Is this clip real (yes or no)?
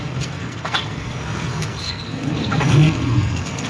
no